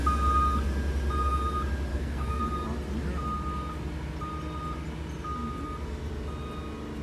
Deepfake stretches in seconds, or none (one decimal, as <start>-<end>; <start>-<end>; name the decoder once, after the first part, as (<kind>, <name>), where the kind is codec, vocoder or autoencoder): 1.9-2.4 (codec, SNAC)